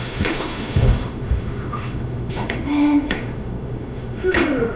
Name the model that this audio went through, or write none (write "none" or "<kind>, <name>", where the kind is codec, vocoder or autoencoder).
autoencoder, DAC-VAE